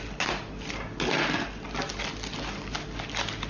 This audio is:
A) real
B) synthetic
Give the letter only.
A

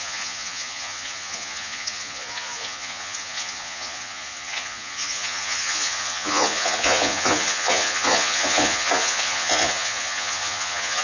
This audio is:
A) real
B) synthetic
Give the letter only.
B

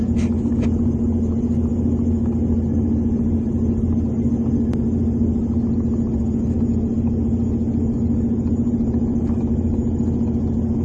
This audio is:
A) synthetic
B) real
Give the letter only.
B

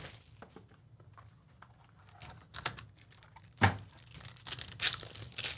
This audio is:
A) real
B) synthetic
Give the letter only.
A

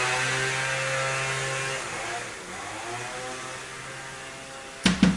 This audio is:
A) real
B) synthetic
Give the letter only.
A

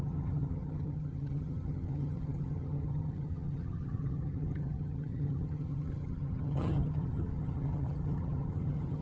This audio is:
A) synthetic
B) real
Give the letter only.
A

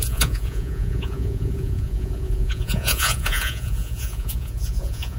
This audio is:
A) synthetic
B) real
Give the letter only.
A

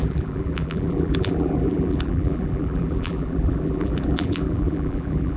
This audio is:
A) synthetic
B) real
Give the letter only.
A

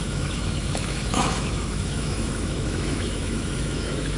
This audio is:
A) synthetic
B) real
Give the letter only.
A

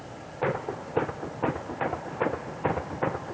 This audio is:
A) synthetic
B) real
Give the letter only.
A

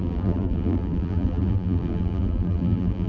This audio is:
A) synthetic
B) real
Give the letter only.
A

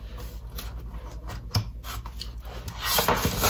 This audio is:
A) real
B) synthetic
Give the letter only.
A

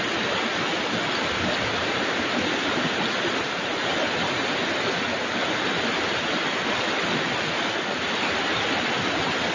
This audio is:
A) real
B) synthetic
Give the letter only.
A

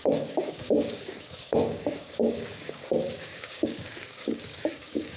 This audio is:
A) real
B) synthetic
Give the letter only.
B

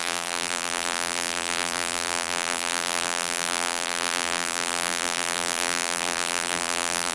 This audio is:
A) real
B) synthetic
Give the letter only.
B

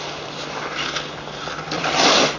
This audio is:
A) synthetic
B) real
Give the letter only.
B